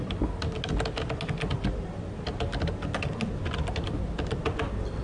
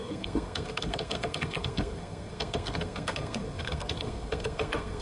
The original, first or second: first